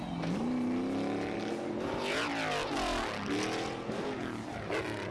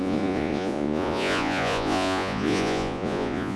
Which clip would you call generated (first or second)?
second